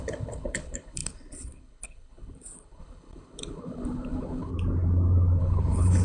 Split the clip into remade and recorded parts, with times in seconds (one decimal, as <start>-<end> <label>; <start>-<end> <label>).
0.0-4.5 remade; 4.5-5.4 recorded; 5.4-6.0 remade